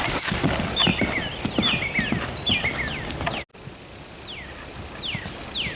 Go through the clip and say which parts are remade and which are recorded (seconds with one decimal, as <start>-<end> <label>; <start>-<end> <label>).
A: 0.0-5.8 recorded